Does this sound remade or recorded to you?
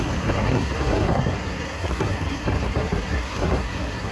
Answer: remade